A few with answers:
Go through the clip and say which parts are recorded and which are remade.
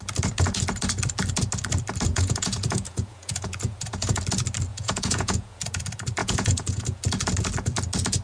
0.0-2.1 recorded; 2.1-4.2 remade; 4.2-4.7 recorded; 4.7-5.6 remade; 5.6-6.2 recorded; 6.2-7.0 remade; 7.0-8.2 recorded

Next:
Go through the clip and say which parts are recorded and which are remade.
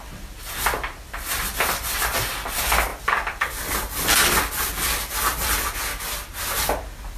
0.0-7.2 recorded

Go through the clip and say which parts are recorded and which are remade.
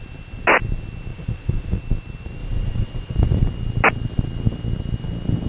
0.0-1.1 recorded; 1.1-1.8 remade; 1.8-2.4 recorded; 2.4-3.4 remade; 3.4-5.5 recorded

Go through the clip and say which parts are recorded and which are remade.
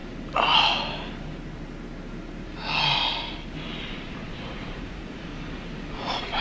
0.0-3.8 recorded; 3.8-5.3 remade; 5.3-5.9 recorded; 5.9-6.4 remade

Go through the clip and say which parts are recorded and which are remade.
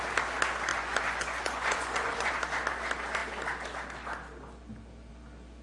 0.0-0.7 recorded; 0.7-2.3 remade; 2.3-5.6 recorded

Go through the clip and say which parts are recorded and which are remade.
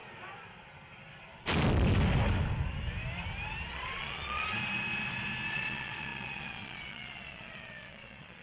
0.0-3.7 recorded; 3.7-4.6 remade; 4.6-5.5 recorded; 5.5-8.4 remade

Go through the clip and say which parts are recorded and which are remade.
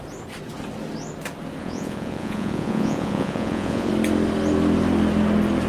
0.0-1.6 recorded; 1.6-3.9 remade; 3.9-5.7 recorded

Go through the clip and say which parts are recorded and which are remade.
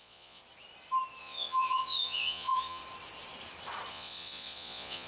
0.0-0.4 remade; 0.4-1.2 recorded; 1.2-2.8 remade; 2.8-3.9 recorded; 3.9-5.1 remade